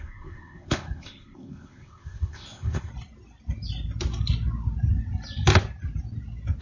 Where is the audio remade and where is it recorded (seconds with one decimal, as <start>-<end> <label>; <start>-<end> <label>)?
0.0-2.9 remade; 2.9-6.6 recorded